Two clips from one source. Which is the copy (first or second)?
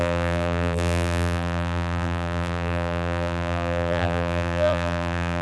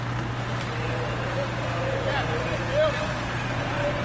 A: first